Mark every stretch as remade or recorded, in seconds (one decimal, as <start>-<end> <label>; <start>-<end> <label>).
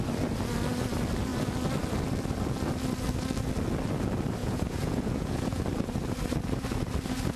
0.0-4.4 recorded; 4.4-5.6 remade; 5.6-7.4 recorded